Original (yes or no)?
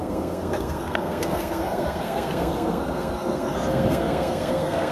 no